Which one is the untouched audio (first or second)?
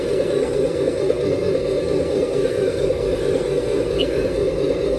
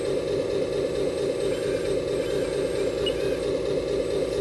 second